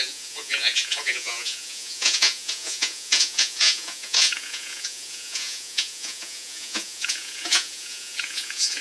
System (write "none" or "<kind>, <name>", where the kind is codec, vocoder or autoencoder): vocoder, Vocos